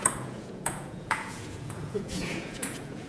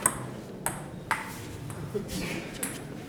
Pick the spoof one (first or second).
first